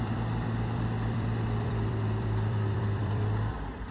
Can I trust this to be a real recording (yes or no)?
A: no